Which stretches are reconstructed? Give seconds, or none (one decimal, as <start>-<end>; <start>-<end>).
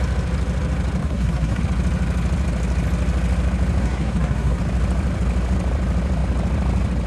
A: 1.0-1.6; 3.8-4.6